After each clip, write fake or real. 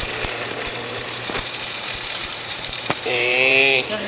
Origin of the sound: fake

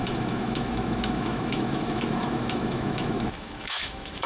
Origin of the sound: fake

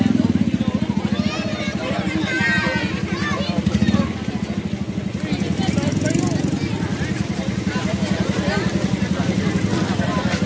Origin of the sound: real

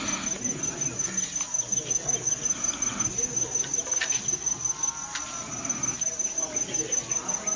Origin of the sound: real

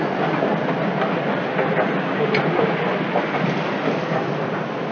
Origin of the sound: real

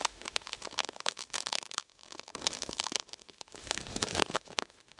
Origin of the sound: fake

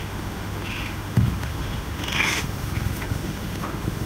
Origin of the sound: fake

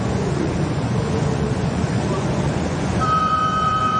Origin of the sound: fake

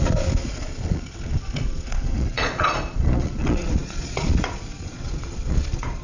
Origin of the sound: fake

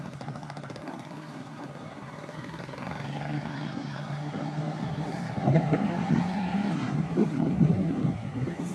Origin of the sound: fake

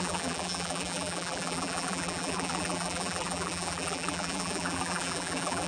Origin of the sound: fake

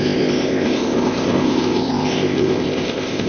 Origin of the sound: fake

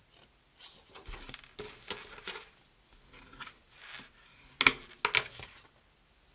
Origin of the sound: real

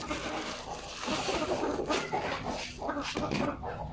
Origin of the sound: real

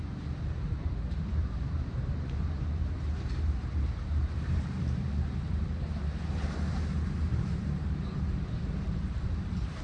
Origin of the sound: fake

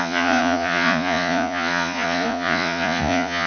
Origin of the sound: fake